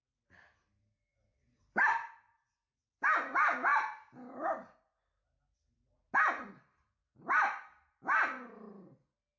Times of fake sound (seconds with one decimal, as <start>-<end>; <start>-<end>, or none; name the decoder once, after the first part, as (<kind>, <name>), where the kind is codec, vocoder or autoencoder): 1.3-2.1 (vocoder, BigVGAN v2)